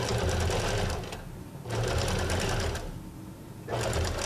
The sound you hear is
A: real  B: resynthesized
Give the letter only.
A